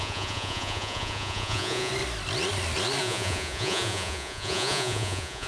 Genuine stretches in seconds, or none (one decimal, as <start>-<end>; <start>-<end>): 1.9-3.0